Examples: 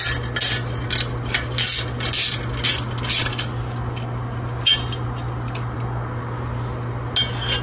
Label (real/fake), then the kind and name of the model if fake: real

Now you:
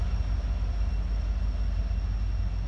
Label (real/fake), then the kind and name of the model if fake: real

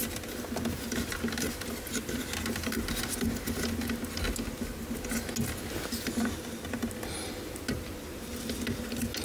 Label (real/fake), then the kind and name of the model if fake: real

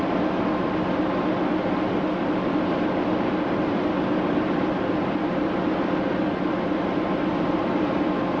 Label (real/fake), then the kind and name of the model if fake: real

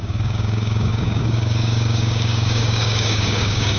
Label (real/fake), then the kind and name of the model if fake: fake, codec, DAC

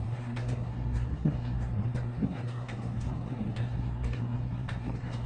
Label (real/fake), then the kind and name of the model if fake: fake, codec, SNAC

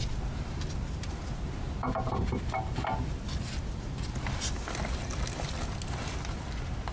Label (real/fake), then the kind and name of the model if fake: real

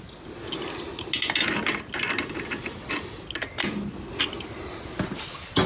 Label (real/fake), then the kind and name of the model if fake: real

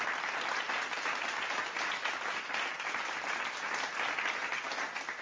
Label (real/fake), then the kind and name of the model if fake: real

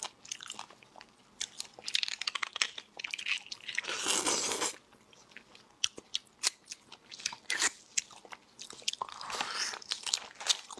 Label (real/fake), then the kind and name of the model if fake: real